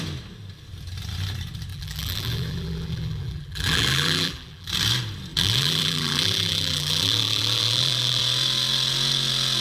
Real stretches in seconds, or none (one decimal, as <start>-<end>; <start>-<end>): 0.0-1.7; 4.7-5.3; 8.2-9.6